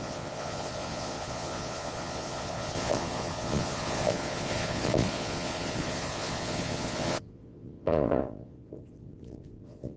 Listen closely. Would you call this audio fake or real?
fake